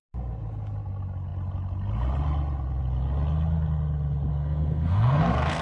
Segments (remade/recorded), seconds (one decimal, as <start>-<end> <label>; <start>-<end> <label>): 0.0-4.3 recorded; 4.3-5.6 remade